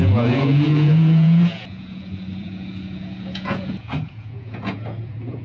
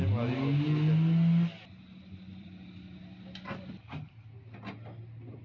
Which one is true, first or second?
second